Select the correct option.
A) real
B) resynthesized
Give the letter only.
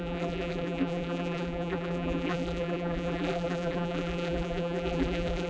B